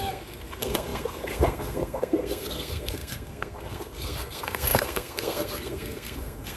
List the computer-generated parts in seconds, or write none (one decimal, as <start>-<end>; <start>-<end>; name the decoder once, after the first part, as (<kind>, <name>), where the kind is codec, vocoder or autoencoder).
0.0-6.6 (codec, SNAC)